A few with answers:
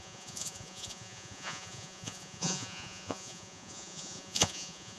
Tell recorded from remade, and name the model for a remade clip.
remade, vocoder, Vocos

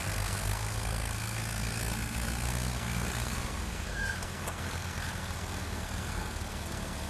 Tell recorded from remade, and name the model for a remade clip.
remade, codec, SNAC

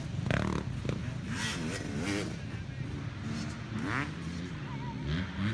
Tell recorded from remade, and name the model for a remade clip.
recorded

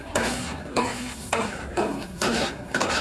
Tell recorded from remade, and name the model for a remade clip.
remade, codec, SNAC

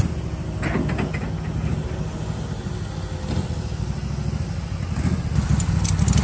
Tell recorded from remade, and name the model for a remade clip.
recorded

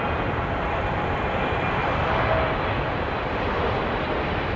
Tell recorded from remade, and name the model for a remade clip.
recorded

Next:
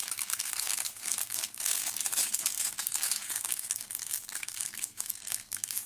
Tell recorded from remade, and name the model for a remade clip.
remade, codec, SNAC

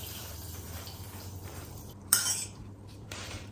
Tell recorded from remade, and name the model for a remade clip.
remade, vocoder, BigVGAN v2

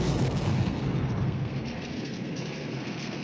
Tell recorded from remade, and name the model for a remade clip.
remade, codec, SNAC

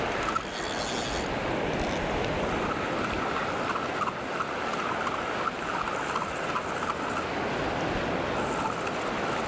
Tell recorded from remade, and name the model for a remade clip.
recorded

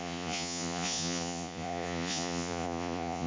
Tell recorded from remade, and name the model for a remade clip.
remade, vocoder, Vocos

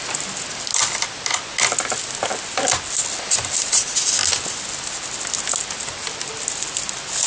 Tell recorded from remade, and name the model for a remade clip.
recorded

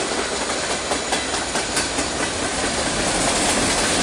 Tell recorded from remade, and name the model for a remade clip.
recorded